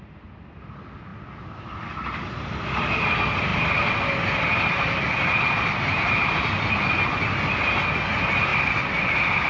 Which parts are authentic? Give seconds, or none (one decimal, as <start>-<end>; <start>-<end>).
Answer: 0.0-9.5